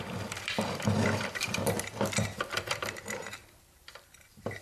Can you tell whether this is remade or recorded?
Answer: remade